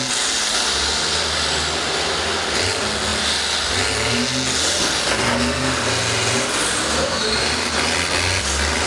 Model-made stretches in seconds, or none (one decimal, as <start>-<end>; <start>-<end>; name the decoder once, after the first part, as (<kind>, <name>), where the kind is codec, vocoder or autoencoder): none